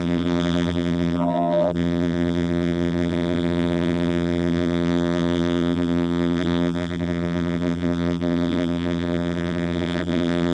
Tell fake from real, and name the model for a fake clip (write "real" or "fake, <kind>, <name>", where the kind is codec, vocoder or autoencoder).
fake, vocoder, BigVGAN v2